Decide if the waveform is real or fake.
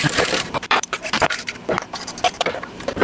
fake